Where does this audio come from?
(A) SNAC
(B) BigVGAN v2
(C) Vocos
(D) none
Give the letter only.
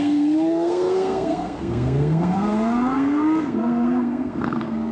A